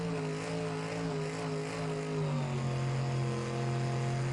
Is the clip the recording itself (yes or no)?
yes